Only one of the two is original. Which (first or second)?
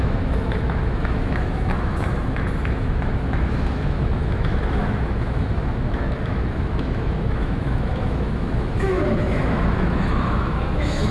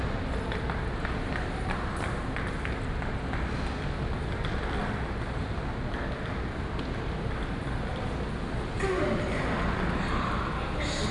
second